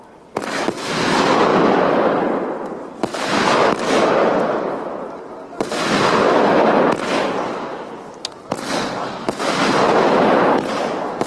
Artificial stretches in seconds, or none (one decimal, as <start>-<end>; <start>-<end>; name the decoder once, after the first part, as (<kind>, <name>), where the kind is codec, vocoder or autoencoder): none